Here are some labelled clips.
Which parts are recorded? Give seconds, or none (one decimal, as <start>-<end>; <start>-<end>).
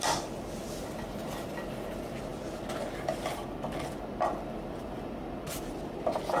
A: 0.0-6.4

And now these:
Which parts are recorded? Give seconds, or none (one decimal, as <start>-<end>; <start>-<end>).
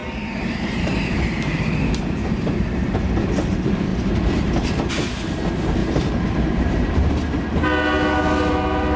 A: 3.3-3.9; 4.9-5.8; 7.1-9.0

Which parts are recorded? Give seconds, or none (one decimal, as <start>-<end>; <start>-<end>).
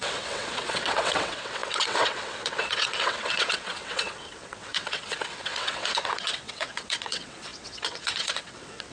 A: none